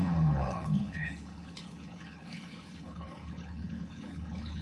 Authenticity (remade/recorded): remade